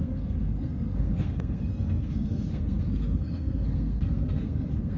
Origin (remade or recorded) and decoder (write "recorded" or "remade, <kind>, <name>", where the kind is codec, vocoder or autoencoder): remade, codec, SNAC